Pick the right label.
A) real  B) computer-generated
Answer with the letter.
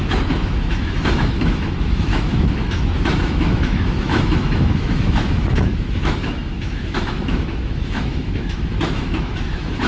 B